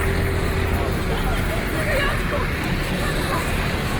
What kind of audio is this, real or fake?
real